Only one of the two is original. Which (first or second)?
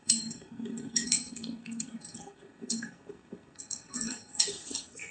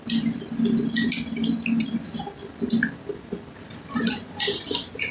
second